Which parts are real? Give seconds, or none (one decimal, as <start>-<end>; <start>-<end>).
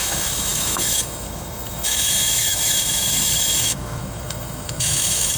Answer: none